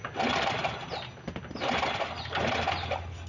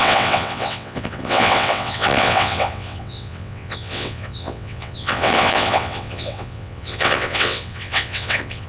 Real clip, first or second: first